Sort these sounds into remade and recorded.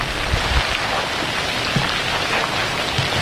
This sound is recorded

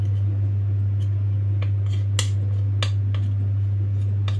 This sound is recorded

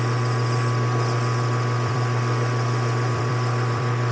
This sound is remade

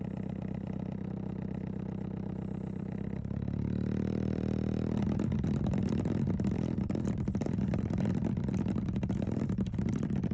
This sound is remade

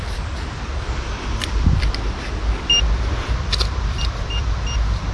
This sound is recorded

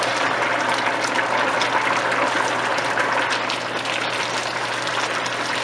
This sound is recorded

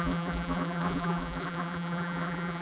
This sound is remade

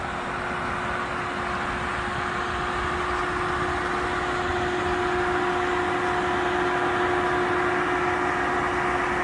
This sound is recorded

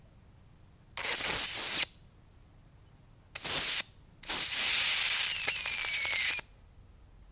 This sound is recorded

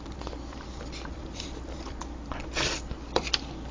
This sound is remade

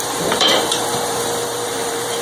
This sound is remade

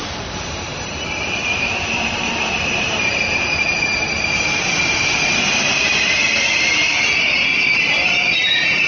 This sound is remade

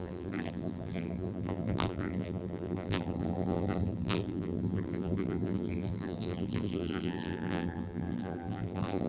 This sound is remade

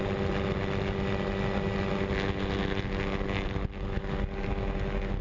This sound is recorded